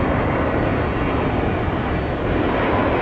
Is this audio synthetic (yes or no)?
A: no